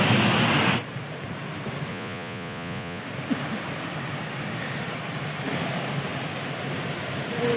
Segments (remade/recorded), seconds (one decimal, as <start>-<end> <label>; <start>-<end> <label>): 0.0-1.9 recorded; 1.9-3.0 remade; 3.0-7.6 recorded